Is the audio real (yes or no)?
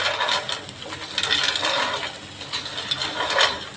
yes